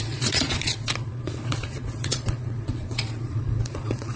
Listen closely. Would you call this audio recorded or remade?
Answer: remade